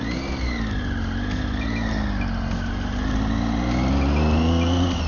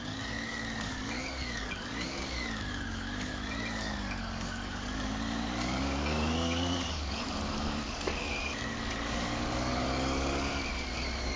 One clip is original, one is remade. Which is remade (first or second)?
second